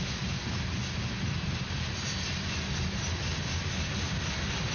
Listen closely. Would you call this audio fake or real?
real